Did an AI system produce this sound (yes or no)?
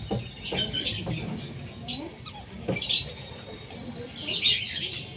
no